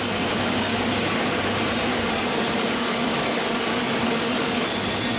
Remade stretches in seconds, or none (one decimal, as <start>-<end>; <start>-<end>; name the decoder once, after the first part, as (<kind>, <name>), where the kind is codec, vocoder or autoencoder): 0.7-1.4 (codec, DAC); 1.9-4.6